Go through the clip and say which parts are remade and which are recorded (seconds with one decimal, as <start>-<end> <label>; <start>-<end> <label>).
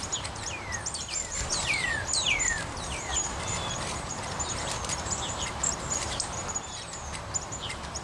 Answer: 0.0-1.9 remade; 1.9-3.1 recorded; 3.1-8.0 remade